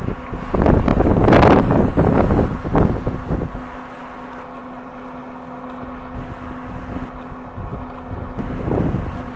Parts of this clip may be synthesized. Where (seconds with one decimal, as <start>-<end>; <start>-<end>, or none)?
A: none